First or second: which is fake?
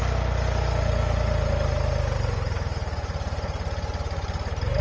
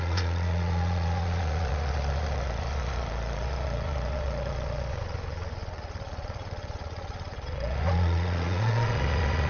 second